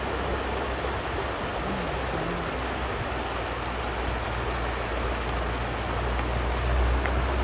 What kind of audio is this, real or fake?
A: real